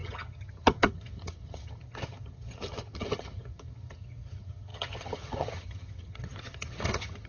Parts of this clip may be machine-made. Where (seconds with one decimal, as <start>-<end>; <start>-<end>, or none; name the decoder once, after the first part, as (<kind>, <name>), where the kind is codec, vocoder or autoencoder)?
0.0-7.3 (vocoder, HiFi-GAN)